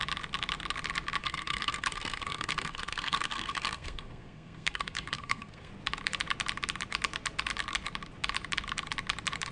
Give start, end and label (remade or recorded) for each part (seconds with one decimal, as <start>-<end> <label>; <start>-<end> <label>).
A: 0.0-1.2 recorded; 1.2-5.7 remade; 5.7-9.5 recorded